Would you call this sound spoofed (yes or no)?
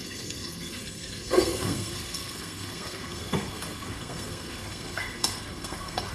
yes